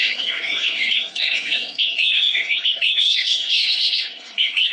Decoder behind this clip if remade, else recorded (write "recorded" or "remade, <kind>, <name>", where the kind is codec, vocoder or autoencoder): remade, codec, SNAC